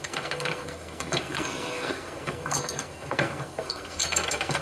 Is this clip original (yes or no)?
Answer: no